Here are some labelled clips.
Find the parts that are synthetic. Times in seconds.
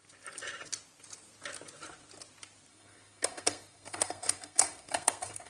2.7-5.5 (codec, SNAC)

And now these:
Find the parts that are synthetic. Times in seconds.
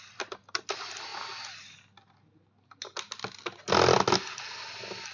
none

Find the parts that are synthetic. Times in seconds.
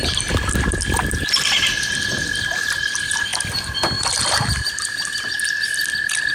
none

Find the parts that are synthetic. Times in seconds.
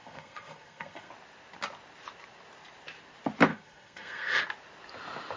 0.0-1.1 (codec, SNAC); 3.5-4.4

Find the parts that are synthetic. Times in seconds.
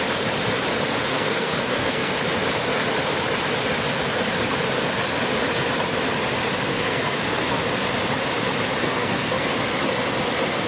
1.1-2.1 (codec, SNAC); 6.7-7.6; 8.8-9.5